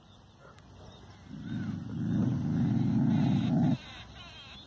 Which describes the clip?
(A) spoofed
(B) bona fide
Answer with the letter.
B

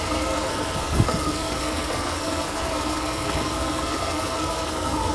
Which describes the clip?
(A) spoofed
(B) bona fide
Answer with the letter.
A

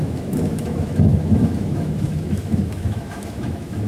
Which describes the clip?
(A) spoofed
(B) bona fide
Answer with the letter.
A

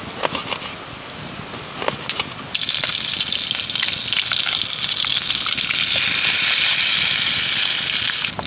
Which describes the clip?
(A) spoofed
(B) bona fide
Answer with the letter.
B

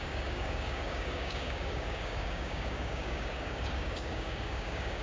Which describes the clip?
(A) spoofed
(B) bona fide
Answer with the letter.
A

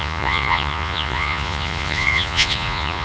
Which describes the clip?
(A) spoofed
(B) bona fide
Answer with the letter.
A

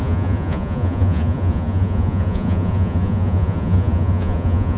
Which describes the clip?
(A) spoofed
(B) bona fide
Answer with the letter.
A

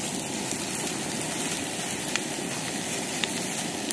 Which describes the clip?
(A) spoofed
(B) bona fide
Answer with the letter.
B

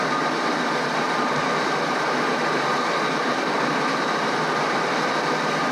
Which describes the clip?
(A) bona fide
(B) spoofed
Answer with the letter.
A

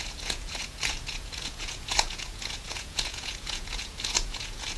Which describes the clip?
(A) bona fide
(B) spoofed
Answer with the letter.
B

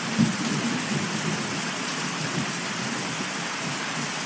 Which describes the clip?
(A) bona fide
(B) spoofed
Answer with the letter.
A